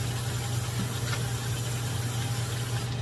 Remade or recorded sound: recorded